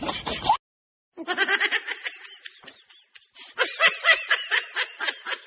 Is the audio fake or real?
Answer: real